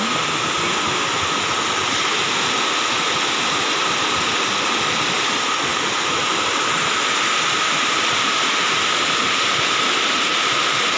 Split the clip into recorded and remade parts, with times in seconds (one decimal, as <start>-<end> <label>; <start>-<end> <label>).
0.0-5.7 recorded; 5.7-6.9 remade; 6.9-11.0 recorded